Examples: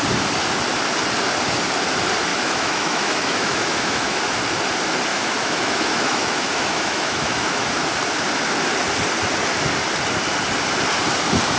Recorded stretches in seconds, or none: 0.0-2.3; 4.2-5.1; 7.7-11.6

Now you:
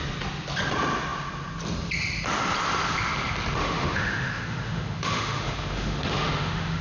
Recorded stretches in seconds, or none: 0.0-3.6

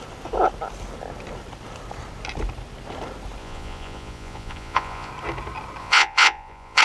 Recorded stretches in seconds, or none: 0.0-3.4; 5.1-5.8